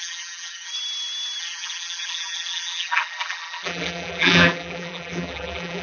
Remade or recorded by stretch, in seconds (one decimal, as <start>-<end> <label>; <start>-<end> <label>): 0.0-0.7 remade; 0.7-1.4 recorded; 1.4-5.8 remade